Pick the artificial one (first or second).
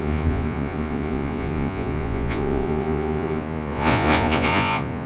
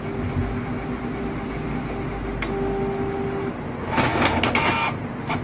first